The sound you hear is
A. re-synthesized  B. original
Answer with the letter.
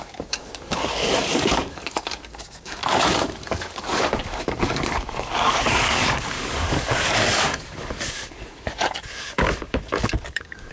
A